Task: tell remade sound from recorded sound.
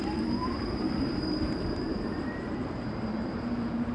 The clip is remade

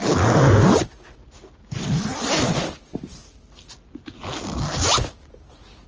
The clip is recorded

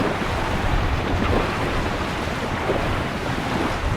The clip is remade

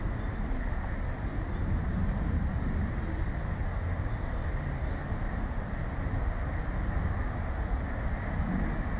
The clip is recorded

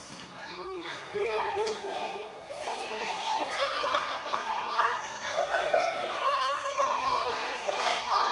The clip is remade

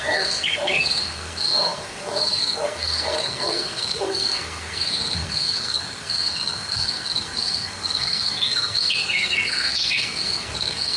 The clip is remade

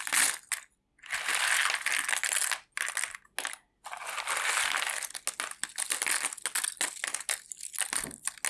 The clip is recorded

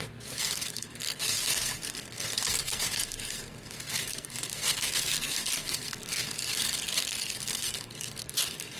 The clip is remade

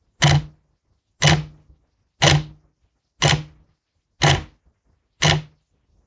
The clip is recorded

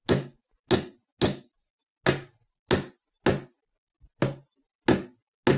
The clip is recorded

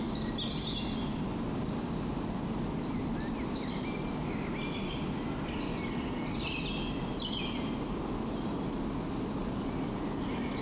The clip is recorded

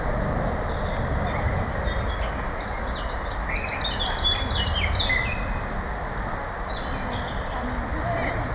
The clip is recorded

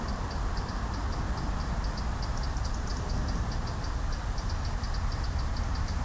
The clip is recorded